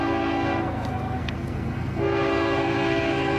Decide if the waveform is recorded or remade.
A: remade